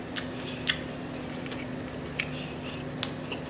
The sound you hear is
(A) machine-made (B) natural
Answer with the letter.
B